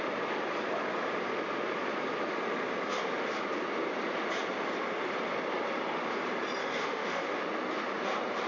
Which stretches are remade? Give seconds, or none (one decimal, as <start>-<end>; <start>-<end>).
6.6-7.4